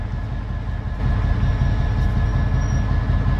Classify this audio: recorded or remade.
recorded